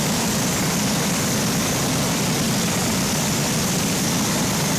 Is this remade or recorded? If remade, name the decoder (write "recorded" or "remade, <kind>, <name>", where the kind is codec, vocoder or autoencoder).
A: recorded